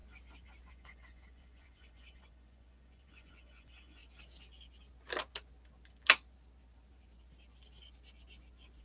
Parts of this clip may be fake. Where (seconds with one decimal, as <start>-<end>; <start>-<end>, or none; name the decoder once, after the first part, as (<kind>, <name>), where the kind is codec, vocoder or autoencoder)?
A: 0.7-4.0 (vocoder, Vocos)

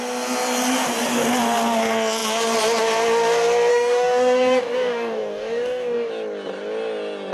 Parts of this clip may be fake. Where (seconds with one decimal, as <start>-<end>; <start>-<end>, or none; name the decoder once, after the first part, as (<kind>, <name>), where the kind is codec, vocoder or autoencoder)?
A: 3.7-6.1 (codec, DAC)

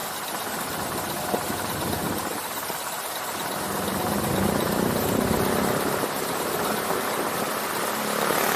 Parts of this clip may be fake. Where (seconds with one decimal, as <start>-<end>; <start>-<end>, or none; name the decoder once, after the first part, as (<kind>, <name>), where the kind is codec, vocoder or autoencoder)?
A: 0.6-2.0 (vocoder, BigVGAN v2); 6.3-8.6

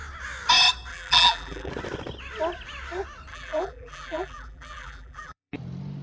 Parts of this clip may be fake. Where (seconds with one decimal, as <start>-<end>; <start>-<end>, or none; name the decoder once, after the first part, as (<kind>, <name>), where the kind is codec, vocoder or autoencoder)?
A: 0.9-1.7 (vocoder, BigVGAN v2); 3.3-5.5